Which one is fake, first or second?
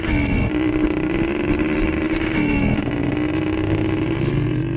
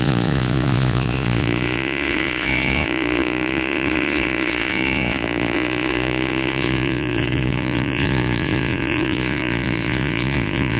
second